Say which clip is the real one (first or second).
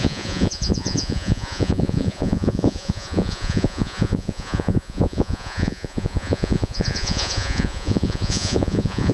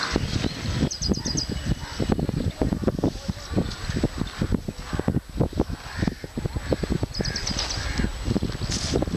second